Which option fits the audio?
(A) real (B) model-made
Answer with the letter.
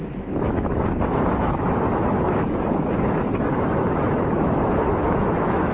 B